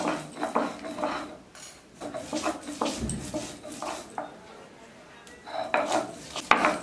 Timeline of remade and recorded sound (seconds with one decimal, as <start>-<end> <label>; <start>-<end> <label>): 0.0-6.8 recorded